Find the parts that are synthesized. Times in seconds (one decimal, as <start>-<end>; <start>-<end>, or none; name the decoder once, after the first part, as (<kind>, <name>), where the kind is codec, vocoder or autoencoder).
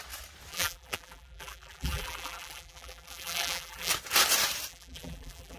0.5-3.9 (vocoder, BigVGAN v2); 4.7-5.6